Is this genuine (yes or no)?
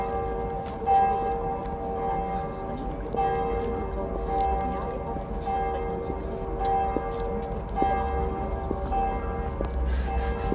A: yes